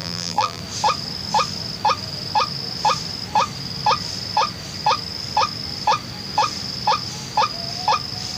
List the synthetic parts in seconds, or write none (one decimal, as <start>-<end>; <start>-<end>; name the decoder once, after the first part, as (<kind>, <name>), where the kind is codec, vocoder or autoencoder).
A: 0.0-0.6 (vocoder, BigVGAN v2)